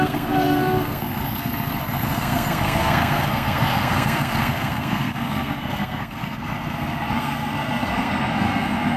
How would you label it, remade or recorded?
remade